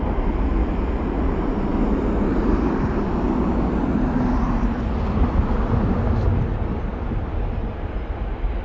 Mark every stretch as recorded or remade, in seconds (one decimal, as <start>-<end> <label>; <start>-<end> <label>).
0.0-8.6 recorded